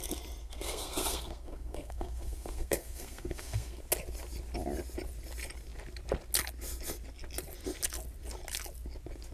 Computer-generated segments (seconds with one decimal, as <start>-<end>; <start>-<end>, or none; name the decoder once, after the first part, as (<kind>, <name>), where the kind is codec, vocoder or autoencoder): 0.4-3.8 (codec, SNAC)